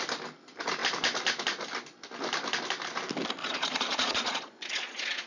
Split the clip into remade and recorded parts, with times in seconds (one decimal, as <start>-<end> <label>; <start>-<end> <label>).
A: 0.0-3.4 recorded; 3.4-5.3 remade